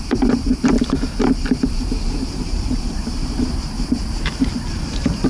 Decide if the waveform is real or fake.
fake